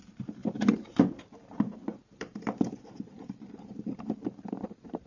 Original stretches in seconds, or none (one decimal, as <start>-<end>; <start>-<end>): 0.0-0.4; 1.0-1.9